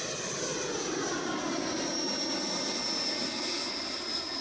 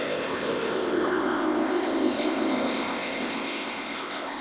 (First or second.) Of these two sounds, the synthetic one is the second